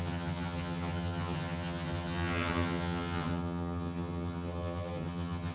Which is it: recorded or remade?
remade